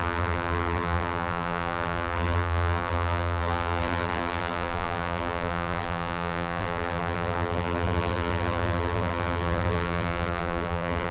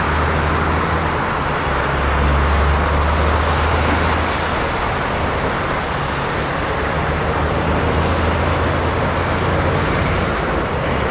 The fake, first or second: first